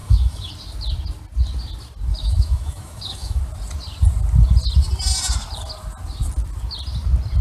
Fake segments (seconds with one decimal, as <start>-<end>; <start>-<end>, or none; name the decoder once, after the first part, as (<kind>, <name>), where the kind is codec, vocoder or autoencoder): 0.0-0.5 (autoencoder, DAC-VAE); 2.1-3.4